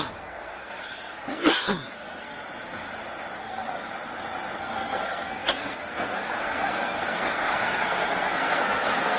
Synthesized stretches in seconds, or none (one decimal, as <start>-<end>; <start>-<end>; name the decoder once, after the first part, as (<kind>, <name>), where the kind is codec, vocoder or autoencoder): 0.0-2.4 (codec, SNAC); 3.4-3.9; 4.6-9.2